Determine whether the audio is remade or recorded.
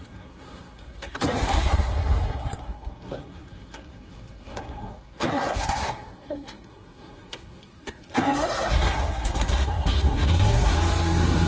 remade